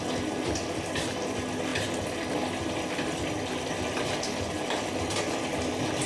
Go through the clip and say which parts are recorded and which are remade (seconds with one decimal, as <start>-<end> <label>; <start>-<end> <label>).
0.0-6.1 recorded